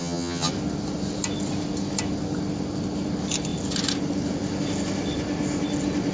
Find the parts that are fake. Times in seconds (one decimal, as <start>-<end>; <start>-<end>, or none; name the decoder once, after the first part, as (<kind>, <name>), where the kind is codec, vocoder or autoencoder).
0.0-0.5 (vocoder, HiFi-GAN)